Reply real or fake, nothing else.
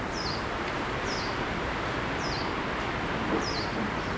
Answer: fake